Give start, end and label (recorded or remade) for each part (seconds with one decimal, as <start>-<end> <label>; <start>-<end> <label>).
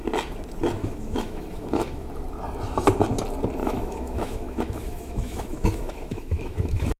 0.0-0.8 recorded; 0.8-2.1 remade; 2.1-3.6 recorded; 3.6-7.0 remade